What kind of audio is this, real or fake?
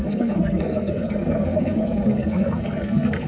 fake